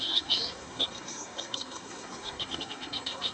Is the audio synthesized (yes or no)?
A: yes